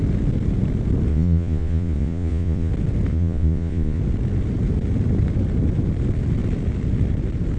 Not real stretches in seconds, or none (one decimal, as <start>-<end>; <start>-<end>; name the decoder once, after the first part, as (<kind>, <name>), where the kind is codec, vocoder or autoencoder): 1.1-2.7 (vocoder, Vocos); 3.1-4.0